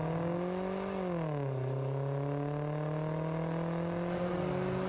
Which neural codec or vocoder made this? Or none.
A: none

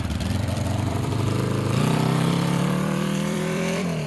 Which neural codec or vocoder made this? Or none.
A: vocoder, BigVGAN v2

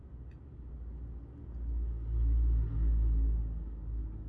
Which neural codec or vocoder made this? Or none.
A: none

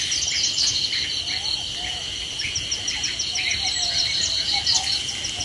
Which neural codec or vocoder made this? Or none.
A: none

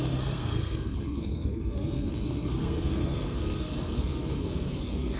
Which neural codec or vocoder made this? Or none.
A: codec, SNAC